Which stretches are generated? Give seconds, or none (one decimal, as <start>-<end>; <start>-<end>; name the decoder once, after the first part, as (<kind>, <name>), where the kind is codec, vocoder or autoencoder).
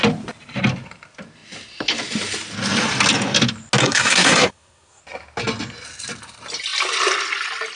3.8-5.0 (codec, SNAC)